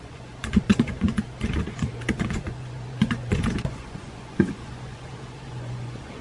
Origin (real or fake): fake